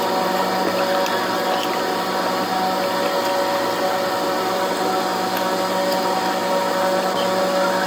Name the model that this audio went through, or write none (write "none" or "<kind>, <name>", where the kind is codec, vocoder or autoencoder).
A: none